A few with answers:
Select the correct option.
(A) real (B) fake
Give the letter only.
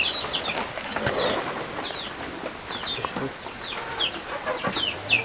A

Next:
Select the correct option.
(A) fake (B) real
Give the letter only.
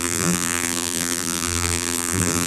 A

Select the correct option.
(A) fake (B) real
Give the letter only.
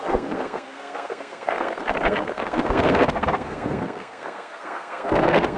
A